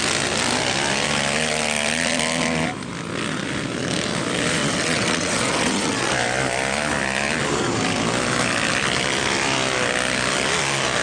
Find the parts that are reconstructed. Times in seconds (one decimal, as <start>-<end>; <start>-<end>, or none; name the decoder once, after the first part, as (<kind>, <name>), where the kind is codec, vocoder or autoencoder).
4.6-6.1 (vocoder, WaveNeXt)